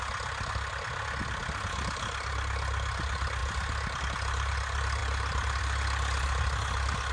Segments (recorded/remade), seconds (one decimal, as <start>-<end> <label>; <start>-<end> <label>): 0.0-7.1 recorded